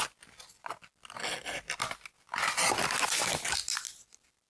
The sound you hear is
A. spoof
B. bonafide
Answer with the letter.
B